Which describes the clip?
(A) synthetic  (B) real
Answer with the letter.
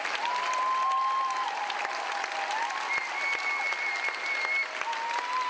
B